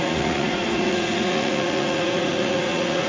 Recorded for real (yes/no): no